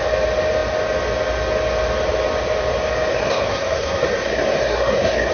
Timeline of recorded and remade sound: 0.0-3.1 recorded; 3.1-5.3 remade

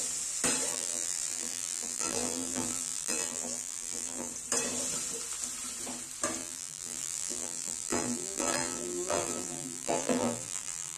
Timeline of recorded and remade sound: 0.0-0.7 recorded; 0.7-4.3 remade; 4.3-6.4 recorded; 6.4-11.0 remade

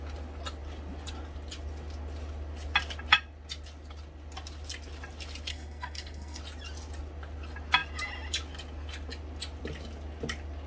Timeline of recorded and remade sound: 0.0-5.5 recorded; 5.5-6.4 remade; 6.4-10.7 recorded

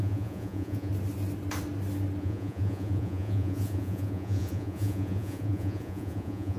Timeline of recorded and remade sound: 0.0-0.9 remade; 0.9-2.2 recorded; 2.2-6.6 remade